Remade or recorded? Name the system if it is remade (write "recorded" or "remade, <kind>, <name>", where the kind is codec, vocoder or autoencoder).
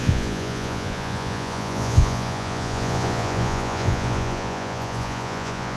remade, vocoder, Vocos